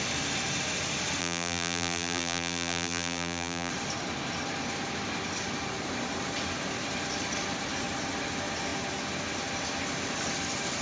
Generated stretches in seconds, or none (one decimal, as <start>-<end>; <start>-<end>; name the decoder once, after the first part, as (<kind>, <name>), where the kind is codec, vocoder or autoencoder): 1.2-3.7 (vocoder, BigVGAN v2)